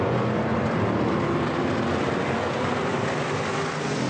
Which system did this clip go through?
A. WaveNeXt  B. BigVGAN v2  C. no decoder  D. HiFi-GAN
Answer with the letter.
C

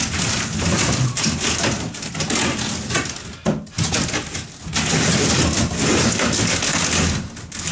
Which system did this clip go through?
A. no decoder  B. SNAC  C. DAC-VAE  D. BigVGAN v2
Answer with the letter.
A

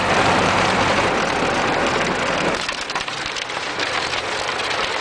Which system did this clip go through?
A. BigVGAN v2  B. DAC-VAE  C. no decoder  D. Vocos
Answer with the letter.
A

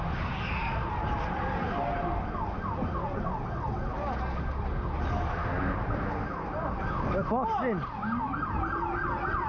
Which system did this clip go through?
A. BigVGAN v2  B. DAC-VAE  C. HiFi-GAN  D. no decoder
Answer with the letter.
D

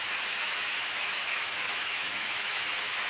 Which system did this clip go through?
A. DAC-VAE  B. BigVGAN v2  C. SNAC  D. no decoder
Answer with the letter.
A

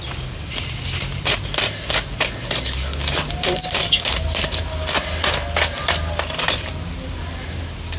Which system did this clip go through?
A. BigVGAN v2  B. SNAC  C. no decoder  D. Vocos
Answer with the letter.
C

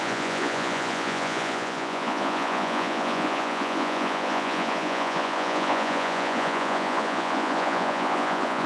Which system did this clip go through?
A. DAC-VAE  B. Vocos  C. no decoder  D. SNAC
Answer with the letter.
B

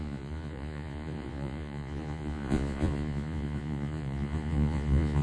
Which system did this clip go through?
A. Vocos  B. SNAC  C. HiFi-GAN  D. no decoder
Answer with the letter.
A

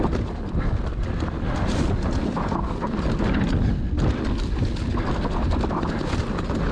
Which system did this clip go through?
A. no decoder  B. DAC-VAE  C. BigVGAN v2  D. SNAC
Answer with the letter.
A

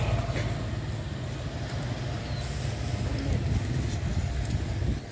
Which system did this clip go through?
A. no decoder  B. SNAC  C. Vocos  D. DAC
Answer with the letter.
A